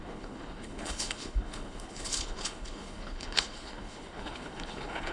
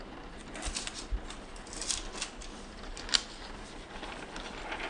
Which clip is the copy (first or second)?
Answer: first